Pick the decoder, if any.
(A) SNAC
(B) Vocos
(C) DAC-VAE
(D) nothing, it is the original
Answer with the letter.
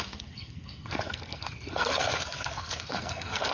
A